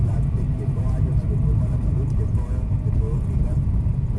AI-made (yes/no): no